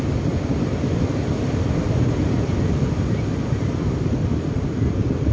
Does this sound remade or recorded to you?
recorded